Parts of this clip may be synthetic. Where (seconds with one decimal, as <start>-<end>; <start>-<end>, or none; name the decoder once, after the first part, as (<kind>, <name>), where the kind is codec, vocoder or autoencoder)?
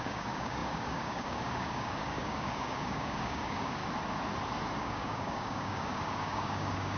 0.0-3.8 (codec, DAC); 4.8-7.0